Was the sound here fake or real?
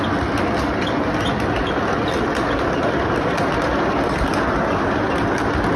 real